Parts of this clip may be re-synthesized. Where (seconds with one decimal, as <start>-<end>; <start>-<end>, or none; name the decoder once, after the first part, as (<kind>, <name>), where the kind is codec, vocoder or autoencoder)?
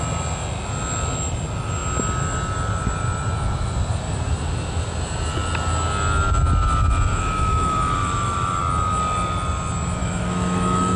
7.1-8.6 (autoencoder, DAC-VAE); 10.0-11.0